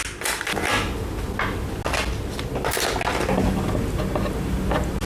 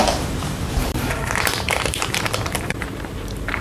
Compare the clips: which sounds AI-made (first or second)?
second